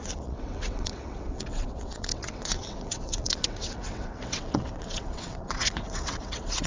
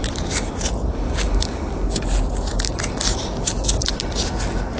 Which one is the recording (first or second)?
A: second